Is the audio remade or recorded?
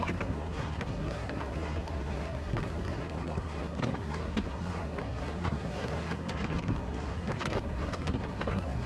remade